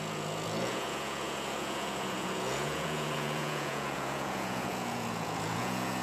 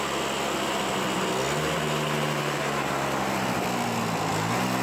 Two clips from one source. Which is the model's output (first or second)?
first